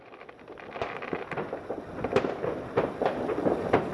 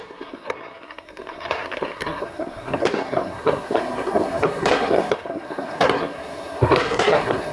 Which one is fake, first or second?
second